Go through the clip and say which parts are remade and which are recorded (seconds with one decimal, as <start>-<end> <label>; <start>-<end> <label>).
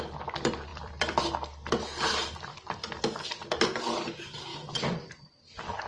0.0-0.7 recorded; 0.7-1.2 remade; 1.2-4.5 recorded; 4.5-5.9 remade